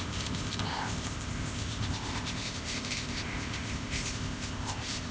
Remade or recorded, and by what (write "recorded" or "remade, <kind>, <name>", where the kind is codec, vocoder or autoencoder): remade, codec, ZipCodec